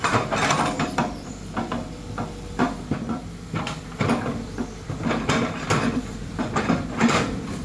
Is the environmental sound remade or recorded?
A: remade